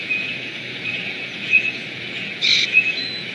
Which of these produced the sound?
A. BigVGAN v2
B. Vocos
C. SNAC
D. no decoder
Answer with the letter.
B